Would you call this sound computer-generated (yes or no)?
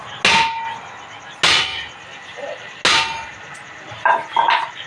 no